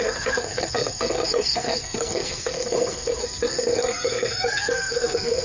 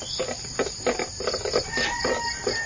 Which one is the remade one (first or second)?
first